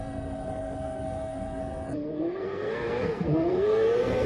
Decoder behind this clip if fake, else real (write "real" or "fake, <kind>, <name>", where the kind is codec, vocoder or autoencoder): fake, codec, SNAC